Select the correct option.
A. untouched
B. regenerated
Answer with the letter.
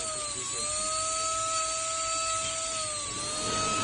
A